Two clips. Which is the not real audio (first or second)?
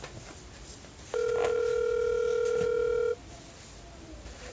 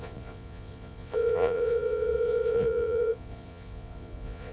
second